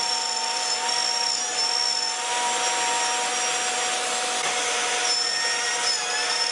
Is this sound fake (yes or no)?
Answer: no